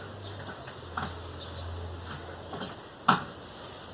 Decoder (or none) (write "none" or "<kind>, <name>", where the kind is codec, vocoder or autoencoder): none